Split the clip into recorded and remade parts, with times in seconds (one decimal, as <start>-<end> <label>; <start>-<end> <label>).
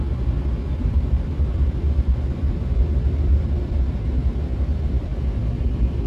0.0-0.8 recorded; 0.8-4.2 remade; 4.2-6.1 recorded